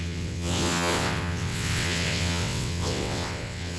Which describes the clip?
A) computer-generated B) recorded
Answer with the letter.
A